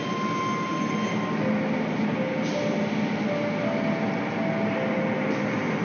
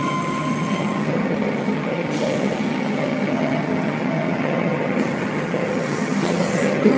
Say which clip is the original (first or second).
first